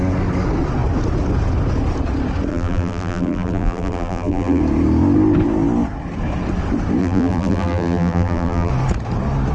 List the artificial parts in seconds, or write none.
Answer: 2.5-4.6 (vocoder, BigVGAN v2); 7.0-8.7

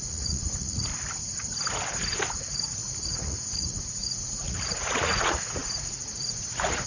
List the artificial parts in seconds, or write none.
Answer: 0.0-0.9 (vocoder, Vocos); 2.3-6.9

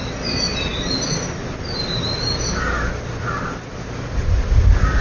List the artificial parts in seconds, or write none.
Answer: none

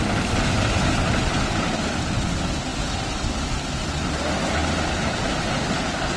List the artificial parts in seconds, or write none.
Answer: none

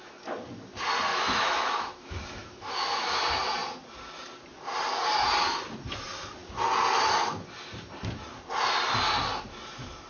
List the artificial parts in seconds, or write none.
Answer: 1.1-3.2 (autoencoder, DAC-VAE)

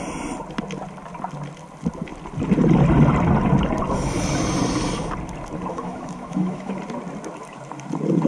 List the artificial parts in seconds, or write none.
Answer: 5.7-6.8 (autoencoder, DAC-VAE)